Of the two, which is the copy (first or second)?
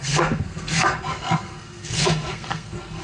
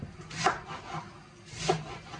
first